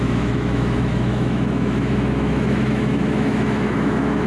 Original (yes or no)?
no